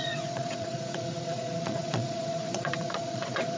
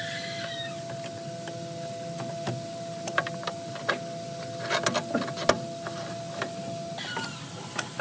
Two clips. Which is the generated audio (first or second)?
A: first